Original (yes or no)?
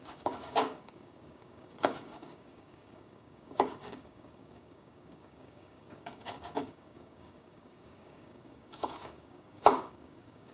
no